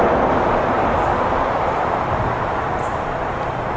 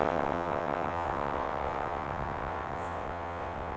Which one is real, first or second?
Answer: first